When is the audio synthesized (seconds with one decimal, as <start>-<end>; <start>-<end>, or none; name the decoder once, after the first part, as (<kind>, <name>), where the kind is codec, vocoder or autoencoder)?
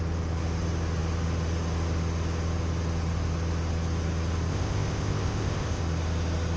4.5-5.8 (codec, ZipCodec)